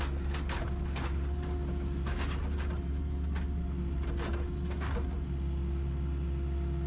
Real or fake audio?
real